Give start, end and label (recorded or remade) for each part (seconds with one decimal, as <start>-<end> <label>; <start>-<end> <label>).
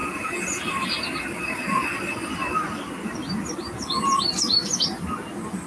0.0-0.6 remade; 0.6-5.7 recorded